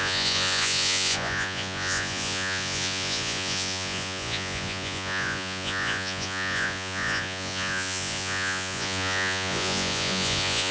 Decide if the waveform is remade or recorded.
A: remade